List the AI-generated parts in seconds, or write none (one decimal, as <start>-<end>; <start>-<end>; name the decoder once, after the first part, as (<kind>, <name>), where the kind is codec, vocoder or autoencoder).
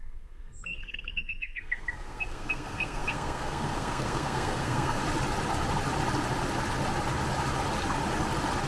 0.0-5.0 (codec, SNAC)